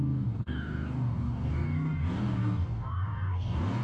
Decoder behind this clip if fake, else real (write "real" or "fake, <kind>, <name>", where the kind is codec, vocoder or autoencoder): fake, codec, DAC